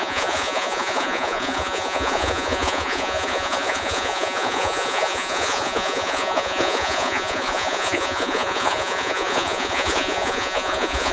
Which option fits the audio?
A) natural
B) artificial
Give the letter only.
B